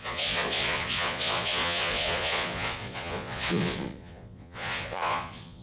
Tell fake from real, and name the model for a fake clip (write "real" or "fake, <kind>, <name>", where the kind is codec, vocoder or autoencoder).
fake, vocoder, Vocos